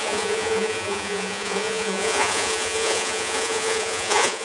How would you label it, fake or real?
fake